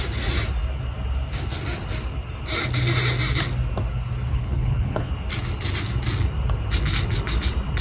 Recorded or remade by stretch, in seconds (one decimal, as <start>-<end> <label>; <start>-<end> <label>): 0.0-4.3 recorded; 4.3-5.1 remade; 5.1-7.8 recorded